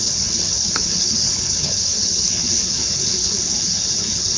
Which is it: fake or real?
fake